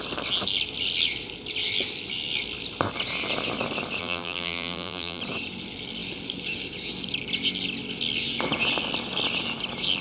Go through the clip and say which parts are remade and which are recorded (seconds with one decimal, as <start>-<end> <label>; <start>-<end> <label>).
0.0-4.0 recorded; 4.0-5.2 remade; 5.2-10.0 recorded